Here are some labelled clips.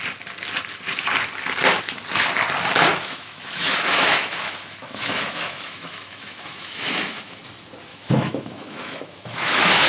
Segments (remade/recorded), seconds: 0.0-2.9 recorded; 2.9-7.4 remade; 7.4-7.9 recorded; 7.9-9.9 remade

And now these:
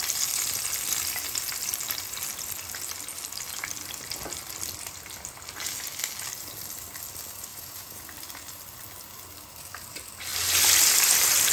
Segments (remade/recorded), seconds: 0.0-7.5 recorded; 7.5-8.0 remade; 8.0-11.5 recorded

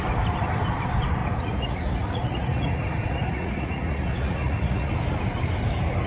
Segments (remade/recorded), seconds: 0.0-1.2 recorded; 1.2-4.9 remade; 4.9-6.1 recorded

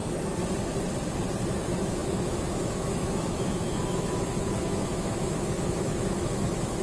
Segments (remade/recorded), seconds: 0.0-1.5 recorded; 1.5-6.8 remade

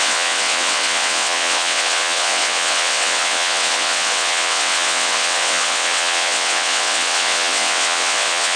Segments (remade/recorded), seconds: 0.0-8.6 remade

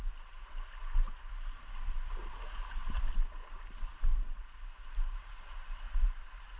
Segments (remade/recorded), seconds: 0.0-4.1 recorded; 4.1-6.6 remade

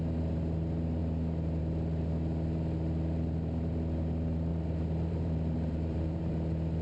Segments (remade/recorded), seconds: 0.0-4.5 recorded; 4.5-6.3 remade; 6.3-6.8 recorded

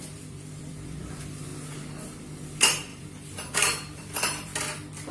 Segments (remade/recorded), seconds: 0.0-1.5 remade; 1.5-2.2 recorded; 2.2-4.5 remade; 4.5-5.1 recorded